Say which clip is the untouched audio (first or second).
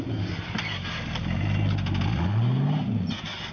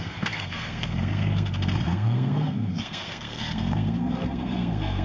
first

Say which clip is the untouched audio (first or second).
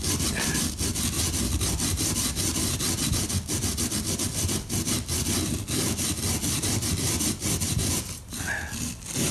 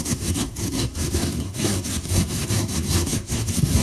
first